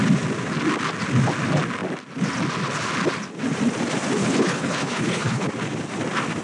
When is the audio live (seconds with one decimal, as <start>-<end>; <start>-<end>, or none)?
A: 0.0-4.2; 5.5-6.4